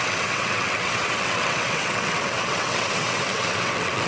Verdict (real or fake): fake